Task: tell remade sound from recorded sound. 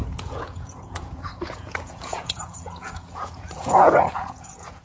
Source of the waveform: remade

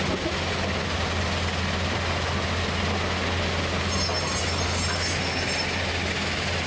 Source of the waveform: recorded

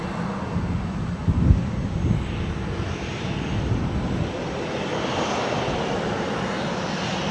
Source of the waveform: recorded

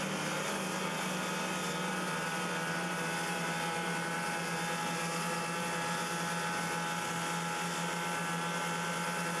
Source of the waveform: recorded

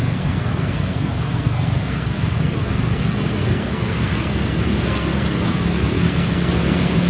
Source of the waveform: remade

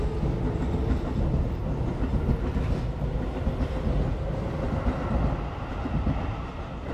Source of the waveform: recorded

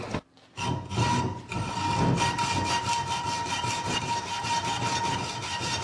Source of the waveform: recorded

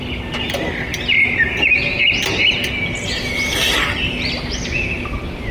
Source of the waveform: recorded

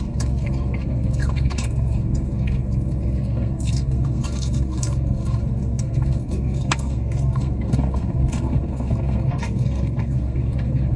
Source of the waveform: remade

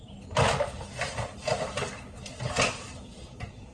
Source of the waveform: recorded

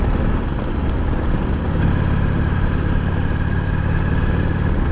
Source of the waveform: recorded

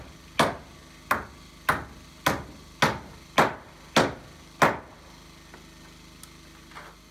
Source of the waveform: recorded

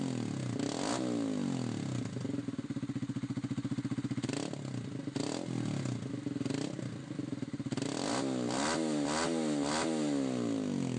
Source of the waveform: recorded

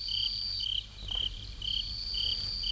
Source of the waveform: remade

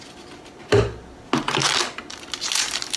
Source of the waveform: recorded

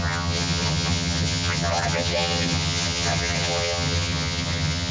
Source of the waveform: remade